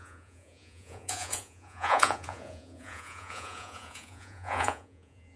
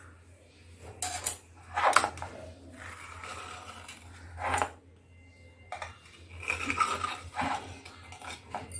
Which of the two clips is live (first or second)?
second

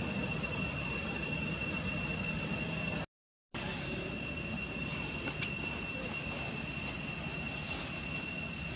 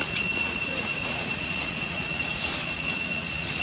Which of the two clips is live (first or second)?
first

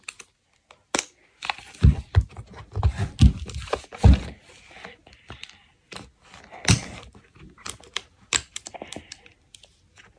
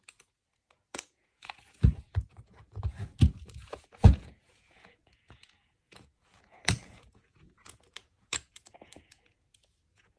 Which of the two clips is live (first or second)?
first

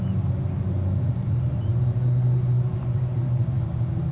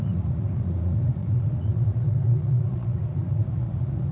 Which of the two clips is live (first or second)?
first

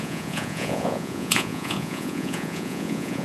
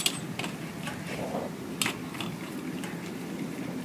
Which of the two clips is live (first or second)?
second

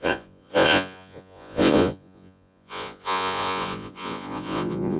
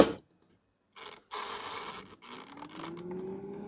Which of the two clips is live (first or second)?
second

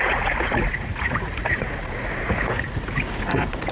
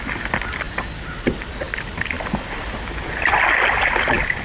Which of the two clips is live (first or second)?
second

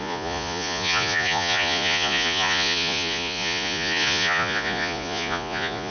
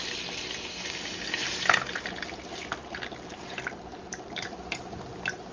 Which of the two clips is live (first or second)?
second